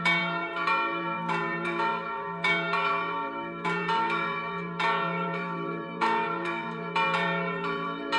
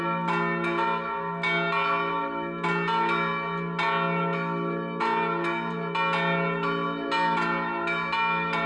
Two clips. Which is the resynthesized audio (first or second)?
first